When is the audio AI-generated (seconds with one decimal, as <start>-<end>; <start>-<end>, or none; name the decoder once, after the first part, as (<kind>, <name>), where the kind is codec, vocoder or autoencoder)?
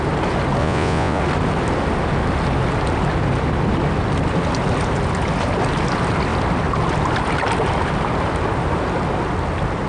0.6-1.2 (vocoder, Vocos)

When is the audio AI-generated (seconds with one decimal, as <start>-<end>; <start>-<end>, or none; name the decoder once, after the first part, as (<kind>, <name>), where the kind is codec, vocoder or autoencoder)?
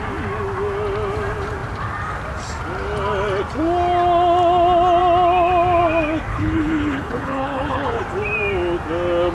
6.3-8.0 (codec, HILCodec)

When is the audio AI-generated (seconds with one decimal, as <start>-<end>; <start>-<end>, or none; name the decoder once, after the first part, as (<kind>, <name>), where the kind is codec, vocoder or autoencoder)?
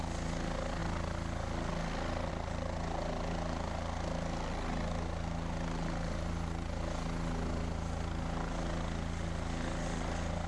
none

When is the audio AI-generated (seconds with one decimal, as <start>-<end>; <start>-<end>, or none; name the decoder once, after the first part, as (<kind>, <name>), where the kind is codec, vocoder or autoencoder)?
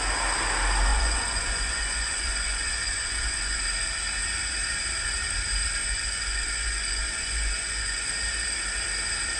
0.9-3.6 (vocoder, Vocos); 5.8-8.1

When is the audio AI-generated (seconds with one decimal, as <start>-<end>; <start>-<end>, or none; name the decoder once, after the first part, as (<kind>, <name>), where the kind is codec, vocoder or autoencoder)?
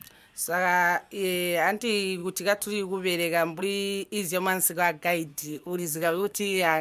5.3-6.8 (codec, SNAC)